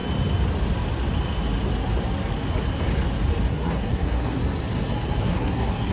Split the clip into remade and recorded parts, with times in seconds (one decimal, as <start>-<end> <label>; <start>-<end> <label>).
0.0-3.5 recorded; 3.5-4.4 remade; 4.4-5.2 recorded; 5.2-5.9 remade